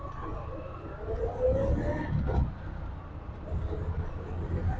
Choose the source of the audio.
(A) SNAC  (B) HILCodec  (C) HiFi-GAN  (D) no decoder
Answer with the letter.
D